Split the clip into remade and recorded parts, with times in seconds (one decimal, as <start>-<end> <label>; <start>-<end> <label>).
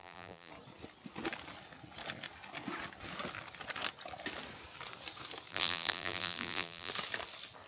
0.0-0.5 remade; 0.5-5.5 recorded; 5.5-6.9 remade; 6.9-7.7 recorded